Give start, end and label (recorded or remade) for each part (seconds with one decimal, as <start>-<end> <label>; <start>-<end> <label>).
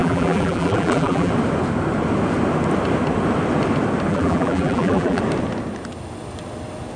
0.0-1.3 remade; 1.3-4.1 recorded; 4.1-5.2 remade; 5.2-7.0 recorded